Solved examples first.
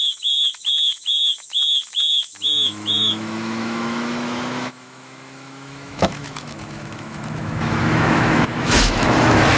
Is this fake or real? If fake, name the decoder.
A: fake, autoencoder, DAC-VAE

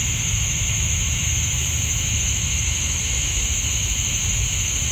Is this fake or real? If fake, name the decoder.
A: fake, autoencoder, DAC-VAE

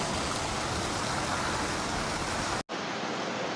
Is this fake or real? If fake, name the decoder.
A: real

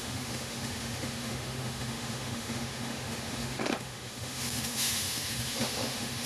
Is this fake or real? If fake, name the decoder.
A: fake, autoencoder, DAC-VAE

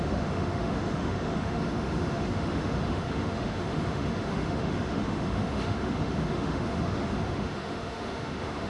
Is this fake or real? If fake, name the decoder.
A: fake, autoencoder, DAC-VAE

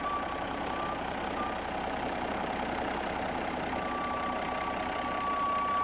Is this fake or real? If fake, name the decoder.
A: real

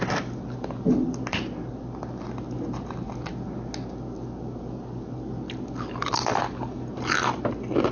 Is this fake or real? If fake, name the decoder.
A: real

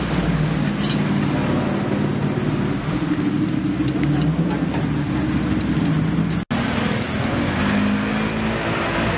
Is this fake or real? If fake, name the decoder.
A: real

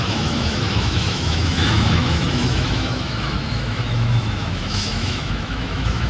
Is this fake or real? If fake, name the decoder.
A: fake, autoencoder, DAC-VAE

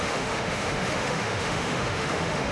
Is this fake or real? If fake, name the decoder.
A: fake, autoencoder, DAC-VAE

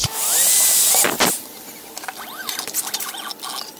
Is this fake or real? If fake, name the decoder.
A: real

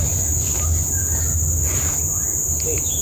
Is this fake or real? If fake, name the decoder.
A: real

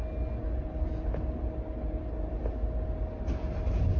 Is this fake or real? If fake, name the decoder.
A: real